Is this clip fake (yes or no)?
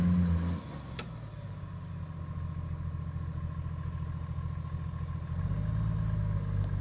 no